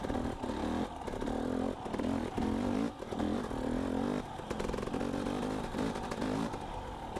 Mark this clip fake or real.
real